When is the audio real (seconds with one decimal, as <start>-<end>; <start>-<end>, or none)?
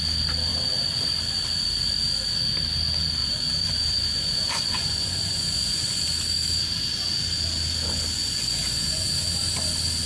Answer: 0.0-3.2; 6.0-8.2; 9.1-10.1